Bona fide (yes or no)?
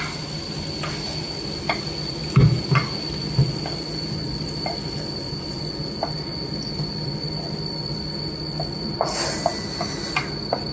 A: yes